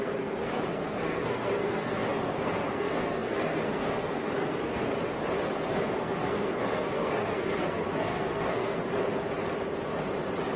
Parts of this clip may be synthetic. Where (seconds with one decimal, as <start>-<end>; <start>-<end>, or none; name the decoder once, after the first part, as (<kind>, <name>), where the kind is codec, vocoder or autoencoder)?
0.0-4.9 (codec, SNAC); 6.0-8.8